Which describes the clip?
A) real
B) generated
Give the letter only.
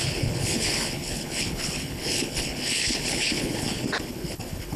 B